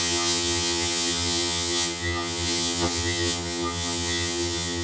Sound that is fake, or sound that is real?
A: fake